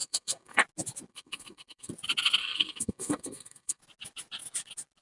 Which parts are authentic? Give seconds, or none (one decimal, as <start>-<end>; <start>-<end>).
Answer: 0.6-1.1; 1.9-2.4; 3.8-5.0